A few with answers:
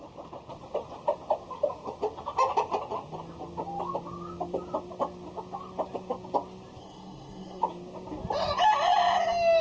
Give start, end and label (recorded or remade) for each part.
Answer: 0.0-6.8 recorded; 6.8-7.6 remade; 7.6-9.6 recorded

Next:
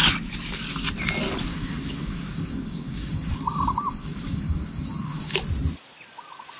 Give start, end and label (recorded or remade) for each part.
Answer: 0.0-1.5 recorded; 1.5-5.4 remade; 5.4-6.6 recorded